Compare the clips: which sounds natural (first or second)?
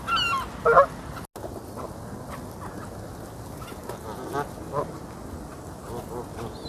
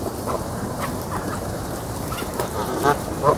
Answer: first